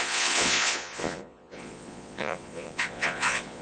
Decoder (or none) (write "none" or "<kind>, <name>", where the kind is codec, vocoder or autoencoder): vocoder, Vocos